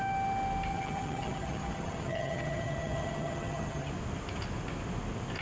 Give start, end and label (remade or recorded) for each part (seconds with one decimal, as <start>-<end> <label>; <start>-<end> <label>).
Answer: 0.0-0.7 recorded; 0.7-3.9 remade; 3.9-5.4 recorded